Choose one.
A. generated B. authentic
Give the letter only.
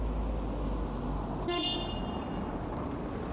B